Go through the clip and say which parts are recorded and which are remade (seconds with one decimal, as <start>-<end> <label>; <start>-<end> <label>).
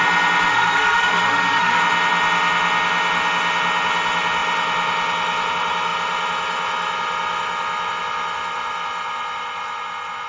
0.0-0.5 recorded; 0.5-1.8 remade; 1.8-10.3 recorded